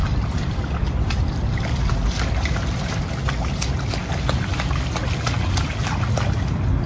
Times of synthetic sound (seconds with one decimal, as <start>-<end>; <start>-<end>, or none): none